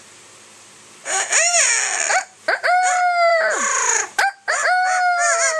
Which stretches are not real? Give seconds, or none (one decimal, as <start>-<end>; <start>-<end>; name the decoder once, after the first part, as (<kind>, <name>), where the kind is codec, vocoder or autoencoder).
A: 1.0-1.7 (vocoder, BigVGAN v2); 2.1-2.8; 3.3-5.6